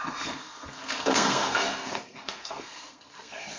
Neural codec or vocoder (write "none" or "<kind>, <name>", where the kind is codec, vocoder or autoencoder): codec, SNAC